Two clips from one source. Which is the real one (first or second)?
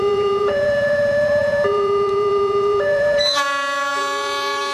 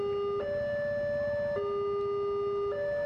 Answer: second